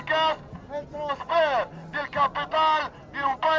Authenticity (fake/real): real